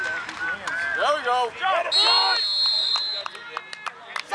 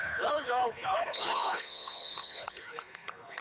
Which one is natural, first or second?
first